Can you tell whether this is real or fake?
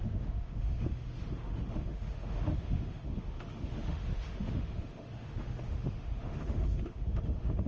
fake